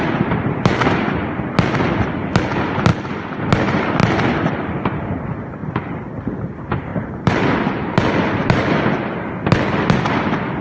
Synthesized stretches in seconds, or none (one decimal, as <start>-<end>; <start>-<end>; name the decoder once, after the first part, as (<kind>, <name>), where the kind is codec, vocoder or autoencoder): 2.9-3.4 (vocoder, BigVGAN v2); 4.0-4.8; 5.6-6.4; 6.9-7.5